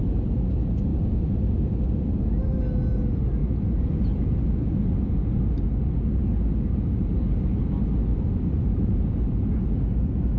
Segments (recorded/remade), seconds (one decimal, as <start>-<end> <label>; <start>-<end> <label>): 0.0-0.9 recorded; 0.9-1.5 remade; 1.5-3.4 recorded; 3.4-3.9 remade; 3.9-8.1 recorded; 8.1-9.3 remade; 9.3-10.4 recorded